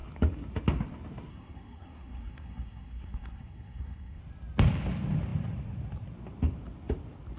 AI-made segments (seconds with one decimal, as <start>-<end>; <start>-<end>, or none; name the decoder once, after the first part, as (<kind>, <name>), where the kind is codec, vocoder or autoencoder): 1.3-4.2 (codec, SNAC)